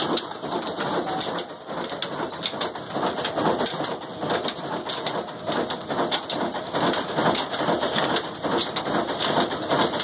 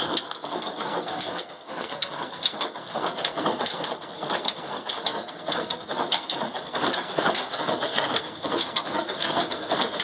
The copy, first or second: second